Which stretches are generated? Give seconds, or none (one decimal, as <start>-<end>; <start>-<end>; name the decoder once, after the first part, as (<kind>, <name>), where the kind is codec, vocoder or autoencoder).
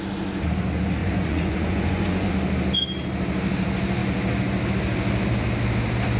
1.0-2.3 (vocoder, Vocos)